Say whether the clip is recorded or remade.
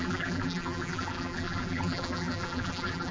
remade